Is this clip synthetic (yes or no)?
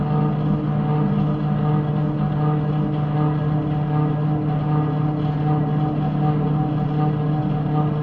no